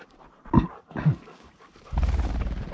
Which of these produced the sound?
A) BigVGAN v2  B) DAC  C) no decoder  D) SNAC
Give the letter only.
A